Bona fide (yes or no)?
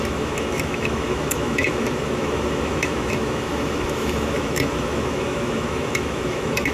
no